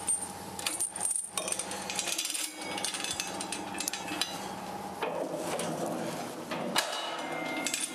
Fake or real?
fake